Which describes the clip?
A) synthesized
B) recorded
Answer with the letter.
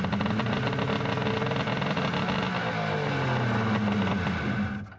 B